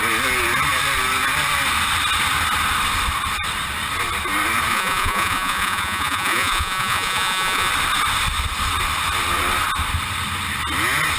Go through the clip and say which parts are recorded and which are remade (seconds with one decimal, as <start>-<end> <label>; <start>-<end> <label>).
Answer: 0.0-4.7 recorded; 4.7-7.7 remade; 7.7-11.2 recorded